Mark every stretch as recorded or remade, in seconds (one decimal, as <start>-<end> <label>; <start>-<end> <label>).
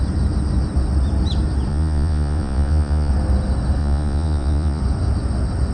0.0-1.7 recorded; 1.7-3.1 remade; 3.1-3.8 recorded; 3.8-4.8 remade; 4.8-5.7 recorded